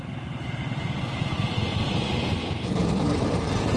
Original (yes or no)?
no